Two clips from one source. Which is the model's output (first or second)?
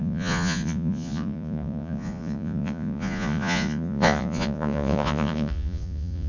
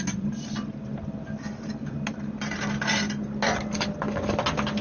first